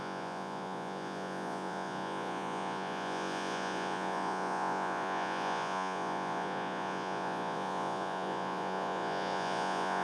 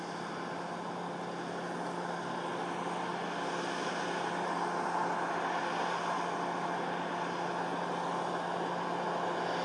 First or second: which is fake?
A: first